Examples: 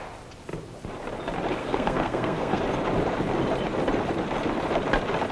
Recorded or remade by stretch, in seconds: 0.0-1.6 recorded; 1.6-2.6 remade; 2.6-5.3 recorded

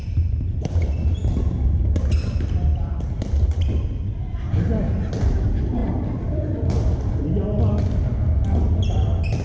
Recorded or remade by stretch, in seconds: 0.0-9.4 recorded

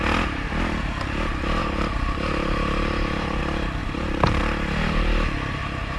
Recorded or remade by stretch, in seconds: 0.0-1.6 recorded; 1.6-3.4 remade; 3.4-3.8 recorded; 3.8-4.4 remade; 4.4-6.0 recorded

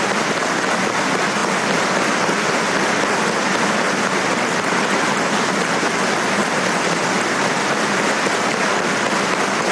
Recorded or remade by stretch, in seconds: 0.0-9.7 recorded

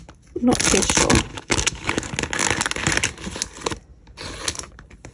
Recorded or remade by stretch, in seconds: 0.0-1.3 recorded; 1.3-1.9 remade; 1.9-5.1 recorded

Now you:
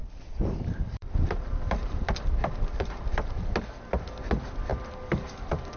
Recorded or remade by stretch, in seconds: 0.0-3.5 remade; 3.5-4.7 recorded; 4.7-5.8 remade

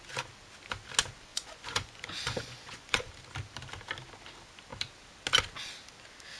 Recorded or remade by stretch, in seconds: 0.0-1.3 recorded; 1.3-3.1 remade; 3.1-6.4 recorded